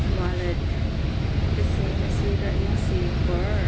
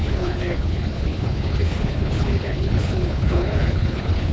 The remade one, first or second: second